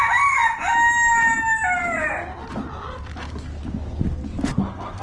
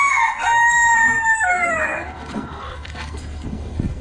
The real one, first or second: first